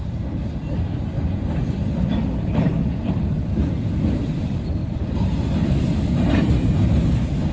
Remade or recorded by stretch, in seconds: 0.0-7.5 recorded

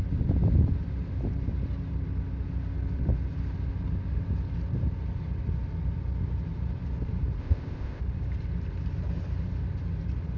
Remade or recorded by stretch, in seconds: 0.0-7.4 recorded; 7.4-8.0 remade; 8.0-10.4 recorded

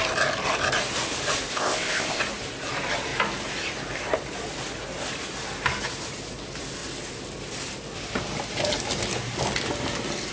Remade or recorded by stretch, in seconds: 0.0-1.5 recorded; 1.5-2.2 remade; 2.2-10.3 recorded